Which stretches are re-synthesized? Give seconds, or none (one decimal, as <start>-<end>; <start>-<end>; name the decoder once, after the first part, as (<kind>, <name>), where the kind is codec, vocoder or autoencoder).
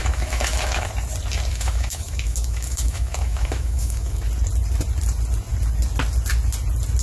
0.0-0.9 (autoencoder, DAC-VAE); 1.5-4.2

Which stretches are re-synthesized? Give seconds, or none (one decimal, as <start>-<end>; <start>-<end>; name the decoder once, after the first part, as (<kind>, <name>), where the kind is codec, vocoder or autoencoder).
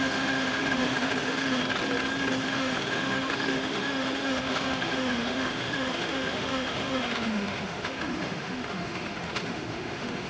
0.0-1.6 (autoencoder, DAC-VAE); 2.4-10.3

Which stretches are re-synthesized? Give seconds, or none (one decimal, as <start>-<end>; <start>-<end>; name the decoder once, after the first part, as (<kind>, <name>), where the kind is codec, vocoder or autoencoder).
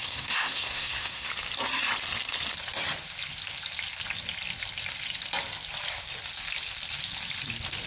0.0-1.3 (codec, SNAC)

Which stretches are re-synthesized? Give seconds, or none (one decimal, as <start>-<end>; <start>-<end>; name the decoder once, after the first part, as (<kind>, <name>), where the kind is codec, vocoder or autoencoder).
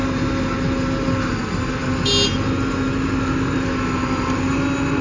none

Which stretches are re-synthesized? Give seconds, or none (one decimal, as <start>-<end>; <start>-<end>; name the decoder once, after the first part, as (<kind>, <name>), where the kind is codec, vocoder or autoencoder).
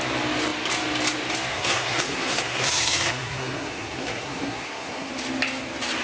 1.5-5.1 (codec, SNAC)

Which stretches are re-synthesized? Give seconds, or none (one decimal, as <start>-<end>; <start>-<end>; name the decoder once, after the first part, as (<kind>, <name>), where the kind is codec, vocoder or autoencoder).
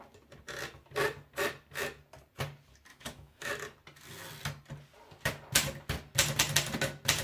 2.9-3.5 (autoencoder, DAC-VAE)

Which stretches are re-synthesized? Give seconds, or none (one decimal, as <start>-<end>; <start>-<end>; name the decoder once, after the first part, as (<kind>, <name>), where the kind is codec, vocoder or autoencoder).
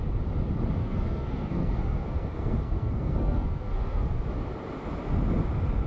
0.8-4.3 (codec, SNAC)